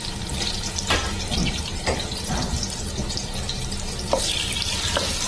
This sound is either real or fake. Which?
real